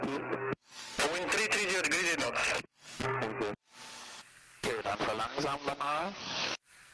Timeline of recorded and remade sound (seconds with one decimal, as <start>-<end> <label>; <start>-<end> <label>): 0.0-0.9 remade; 0.9-2.2 recorded; 2.2-3.3 remade; 3.3-3.9 recorded; 3.9-4.9 remade; 4.9-5.7 recorded; 5.7-6.9 remade